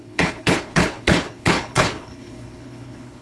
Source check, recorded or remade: remade